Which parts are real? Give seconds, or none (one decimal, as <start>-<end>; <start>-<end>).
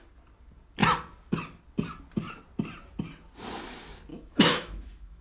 0.0-4.1